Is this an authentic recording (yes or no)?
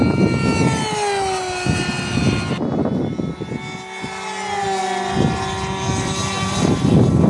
yes